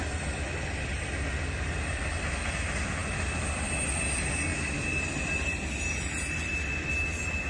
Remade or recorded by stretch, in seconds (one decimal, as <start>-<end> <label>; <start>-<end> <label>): 0.0-7.5 recorded